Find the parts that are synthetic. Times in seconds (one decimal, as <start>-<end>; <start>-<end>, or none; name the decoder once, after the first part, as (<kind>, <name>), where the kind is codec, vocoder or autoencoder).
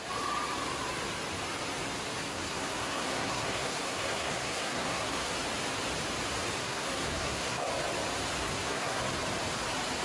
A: 2.3-5.3 (codec, SNAC); 6.6-7.7; 8.4-9.0